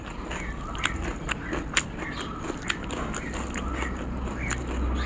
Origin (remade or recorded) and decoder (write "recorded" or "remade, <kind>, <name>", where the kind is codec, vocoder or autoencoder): recorded